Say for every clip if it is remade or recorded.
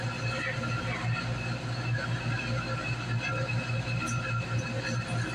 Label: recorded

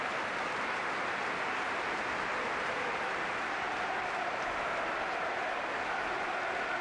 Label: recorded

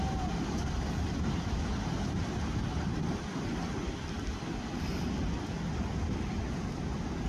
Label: recorded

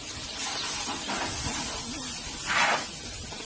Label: recorded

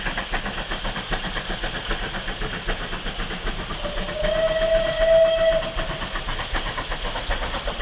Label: recorded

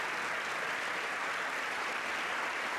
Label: remade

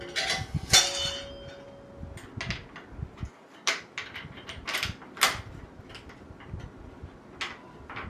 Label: recorded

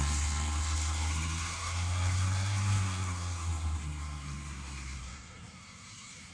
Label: remade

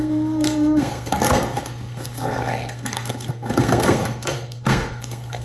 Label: remade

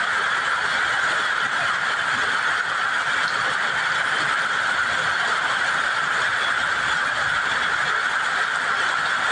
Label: recorded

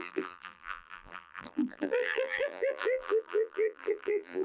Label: remade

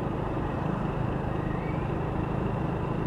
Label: remade